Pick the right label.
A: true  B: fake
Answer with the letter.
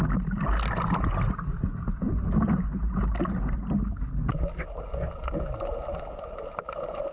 A